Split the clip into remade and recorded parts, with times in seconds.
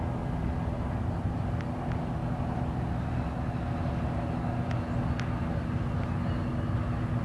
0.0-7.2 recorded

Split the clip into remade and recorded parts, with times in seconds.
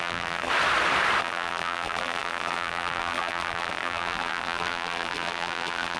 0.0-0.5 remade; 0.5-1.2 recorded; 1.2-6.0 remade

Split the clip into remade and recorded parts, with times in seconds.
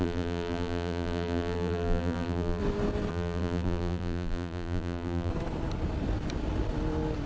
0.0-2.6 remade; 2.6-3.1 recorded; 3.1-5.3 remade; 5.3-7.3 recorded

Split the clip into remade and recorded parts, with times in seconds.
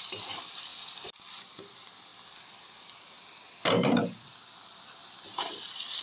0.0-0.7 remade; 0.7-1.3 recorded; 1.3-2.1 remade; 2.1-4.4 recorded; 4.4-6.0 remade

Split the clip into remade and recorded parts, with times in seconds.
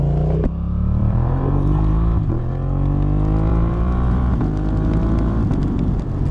0.0-1.0 recorded; 1.0-2.5 remade; 2.5-3.5 recorded; 3.5-4.4 remade; 4.4-6.3 recorded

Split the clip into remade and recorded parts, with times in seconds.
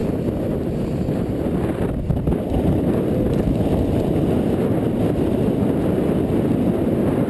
0.0-7.3 recorded